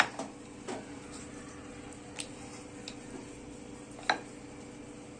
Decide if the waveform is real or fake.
real